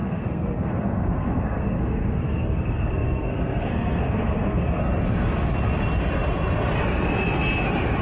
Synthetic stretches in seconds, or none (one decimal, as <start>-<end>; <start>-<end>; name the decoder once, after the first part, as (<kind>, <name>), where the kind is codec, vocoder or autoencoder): 0.0-4.8 (codec, SNAC)